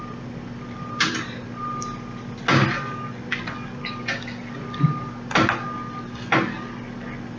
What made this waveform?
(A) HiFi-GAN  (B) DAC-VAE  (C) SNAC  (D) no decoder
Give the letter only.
D